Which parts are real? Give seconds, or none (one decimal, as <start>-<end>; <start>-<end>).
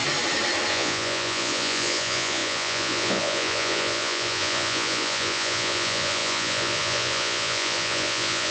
0.0-0.7